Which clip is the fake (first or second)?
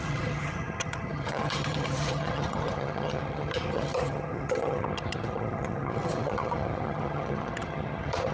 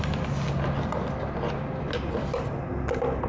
first